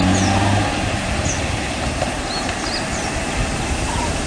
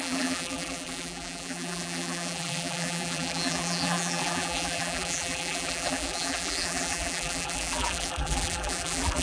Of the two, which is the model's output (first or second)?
second